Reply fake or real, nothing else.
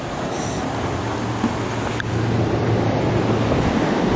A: real